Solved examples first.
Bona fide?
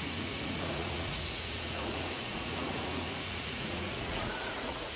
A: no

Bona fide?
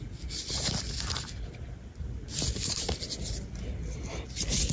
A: yes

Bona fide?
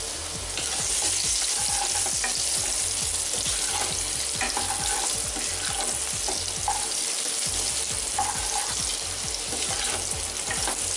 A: yes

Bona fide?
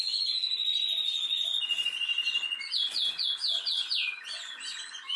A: no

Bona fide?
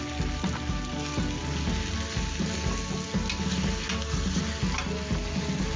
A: yes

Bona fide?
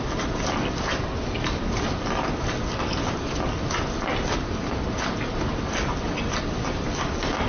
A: yes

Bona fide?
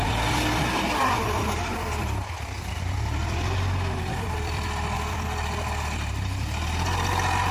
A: yes